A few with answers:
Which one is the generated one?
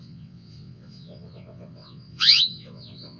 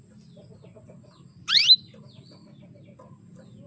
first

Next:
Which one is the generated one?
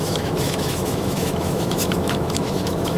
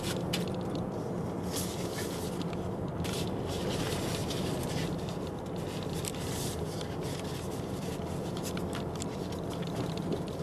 first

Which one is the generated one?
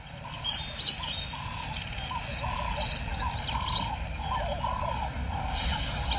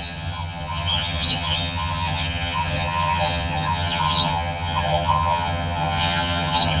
second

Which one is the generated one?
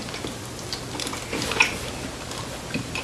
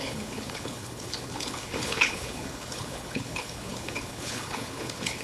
second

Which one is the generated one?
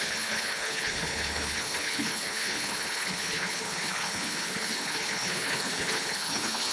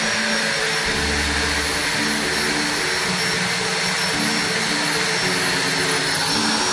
first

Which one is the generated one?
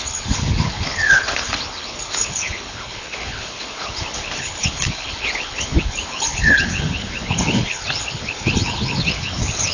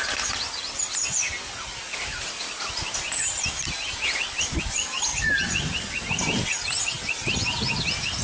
first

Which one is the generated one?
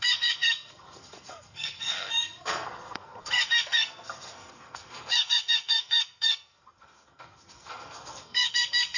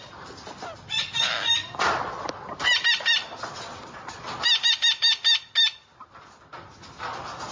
first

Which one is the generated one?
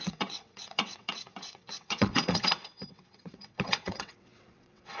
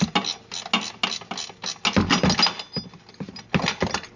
first